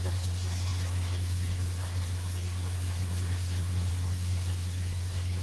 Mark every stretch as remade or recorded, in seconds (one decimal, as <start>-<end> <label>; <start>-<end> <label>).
0.0-5.4 remade